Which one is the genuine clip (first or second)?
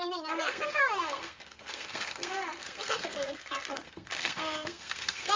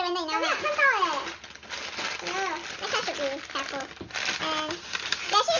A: second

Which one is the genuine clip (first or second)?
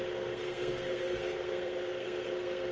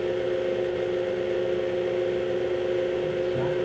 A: second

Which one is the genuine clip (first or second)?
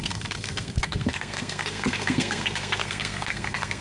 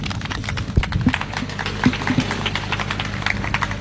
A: second